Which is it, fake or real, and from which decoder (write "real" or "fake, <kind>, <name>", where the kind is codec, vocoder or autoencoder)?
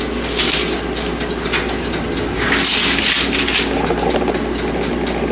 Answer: real